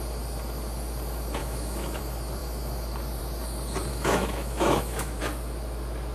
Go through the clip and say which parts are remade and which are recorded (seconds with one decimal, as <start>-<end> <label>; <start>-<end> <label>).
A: 0.0-1.4 recorded; 1.4-2.0 remade; 2.0-3.9 recorded; 3.9-5.2 remade; 5.2-6.1 recorded